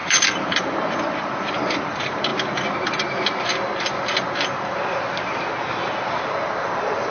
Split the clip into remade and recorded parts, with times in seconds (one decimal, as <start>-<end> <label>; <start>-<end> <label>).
0.0-2.3 remade; 2.3-6.6 recorded; 6.6-7.1 remade